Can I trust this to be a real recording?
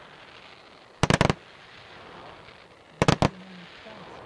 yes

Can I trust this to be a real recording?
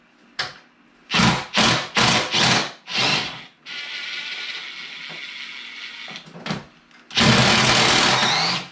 yes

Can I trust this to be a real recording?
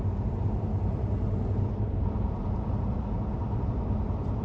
yes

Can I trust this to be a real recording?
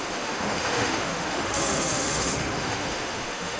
no